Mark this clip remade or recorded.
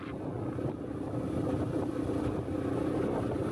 recorded